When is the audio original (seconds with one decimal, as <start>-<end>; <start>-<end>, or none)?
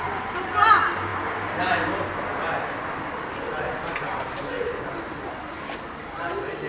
0.0-6.7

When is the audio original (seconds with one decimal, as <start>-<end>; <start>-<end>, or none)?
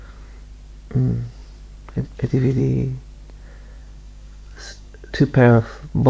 0.0-3.8; 5.6-6.1